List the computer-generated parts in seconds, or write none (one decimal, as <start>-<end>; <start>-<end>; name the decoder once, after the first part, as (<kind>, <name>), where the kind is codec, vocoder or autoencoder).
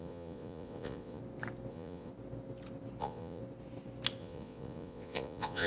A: 0.0-1.2 (vocoder, Vocos); 1.7-2.1; 3.0-3.4; 4.2-5.7